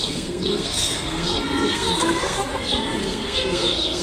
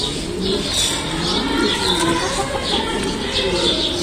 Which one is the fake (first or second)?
first